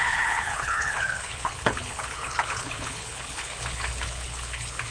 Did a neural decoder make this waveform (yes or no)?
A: yes